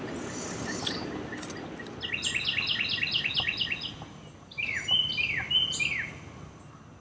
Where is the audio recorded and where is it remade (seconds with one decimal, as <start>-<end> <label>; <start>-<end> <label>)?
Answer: 0.0-3.9 recorded; 3.9-6.6 remade; 6.6-7.0 recorded